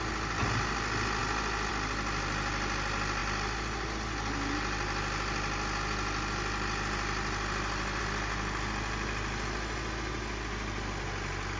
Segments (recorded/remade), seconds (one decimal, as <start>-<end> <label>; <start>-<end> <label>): 0.0-11.6 recorded